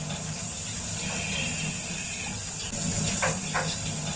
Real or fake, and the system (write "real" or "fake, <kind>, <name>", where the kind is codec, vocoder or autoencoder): real